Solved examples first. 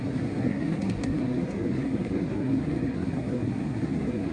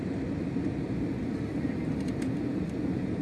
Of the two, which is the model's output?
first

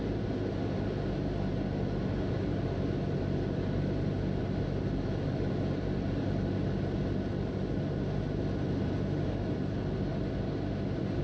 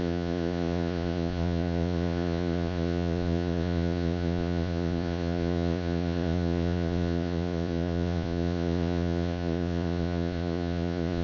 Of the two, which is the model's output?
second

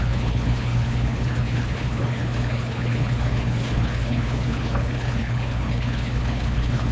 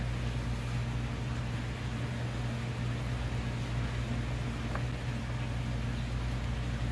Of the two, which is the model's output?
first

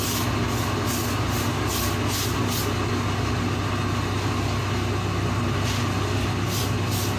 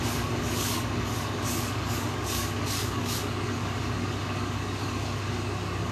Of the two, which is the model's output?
second